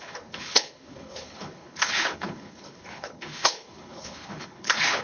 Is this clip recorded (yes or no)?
no